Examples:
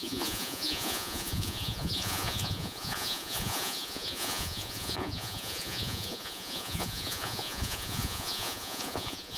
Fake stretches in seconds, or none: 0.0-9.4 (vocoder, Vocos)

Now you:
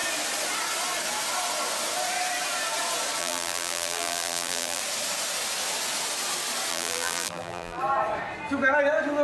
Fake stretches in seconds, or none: 3.2-4.8 (vocoder, BigVGAN v2); 6.7-7.8

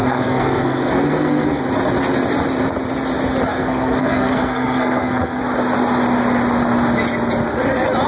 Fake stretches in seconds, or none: 0.0-1.6 (codec, SNAC); 3.5-5.4

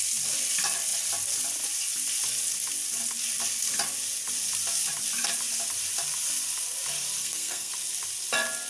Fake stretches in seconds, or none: 7.2-7.7 (codec, SNAC)

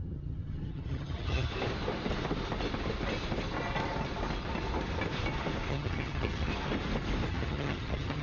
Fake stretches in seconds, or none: 0.0-1.5 (vocoder, HiFi-GAN); 5.7-6.5; 7.3-8.2